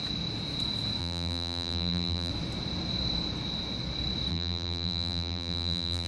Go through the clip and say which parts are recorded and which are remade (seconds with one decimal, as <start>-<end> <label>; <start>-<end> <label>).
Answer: 0.0-1.0 recorded; 1.0-2.3 remade; 2.3-4.3 recorded; 4.3-6.1 remade